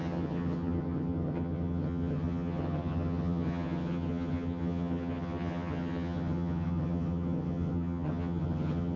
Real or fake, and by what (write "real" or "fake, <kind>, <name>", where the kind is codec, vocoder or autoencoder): fake, vocoder, HiFi-GAN